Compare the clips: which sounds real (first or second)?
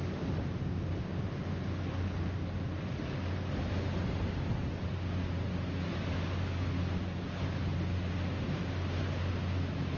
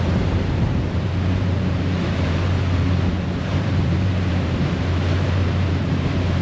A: first